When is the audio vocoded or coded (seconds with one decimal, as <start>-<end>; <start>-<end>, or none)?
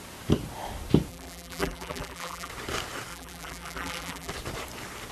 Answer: 1.1-2.5; 3.1-4.3